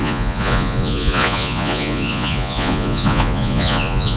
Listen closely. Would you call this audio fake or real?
fake